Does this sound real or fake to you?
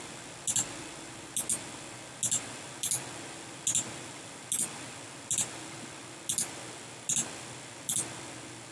real